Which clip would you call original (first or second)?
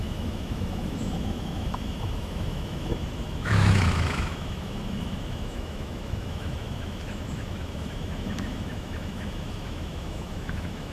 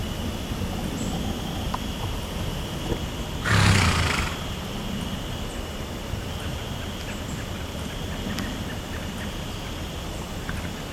second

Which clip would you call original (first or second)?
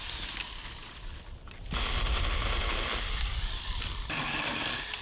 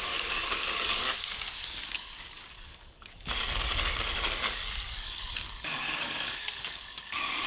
first